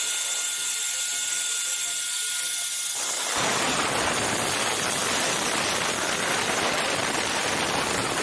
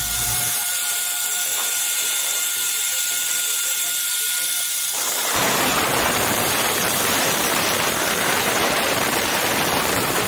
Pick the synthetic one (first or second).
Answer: second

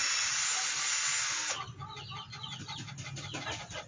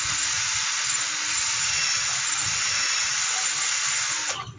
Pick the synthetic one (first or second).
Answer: second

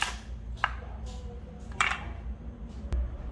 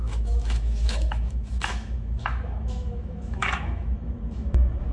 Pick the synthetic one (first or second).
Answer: second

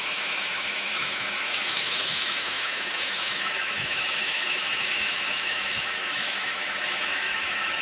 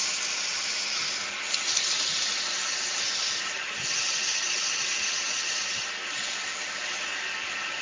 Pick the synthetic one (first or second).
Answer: first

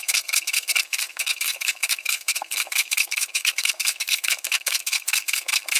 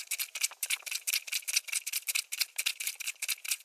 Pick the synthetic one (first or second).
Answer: first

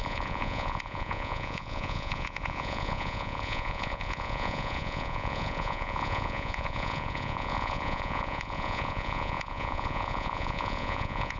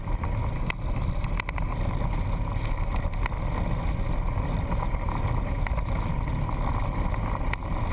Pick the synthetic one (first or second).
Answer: first